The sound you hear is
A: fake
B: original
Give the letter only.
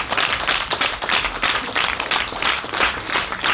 A